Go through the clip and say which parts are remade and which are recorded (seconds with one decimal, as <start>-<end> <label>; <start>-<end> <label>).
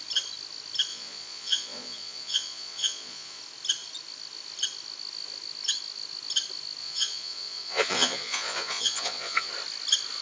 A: 0.0-0.9 recorded; 0.9-3.4 remade; 3.4-6.8 recorded; 6.8-9.5 remade; 9.5-10.2 recorded